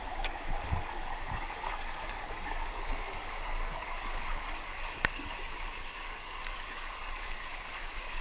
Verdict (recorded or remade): remade